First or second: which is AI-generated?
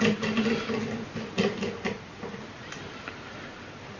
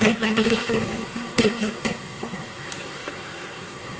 second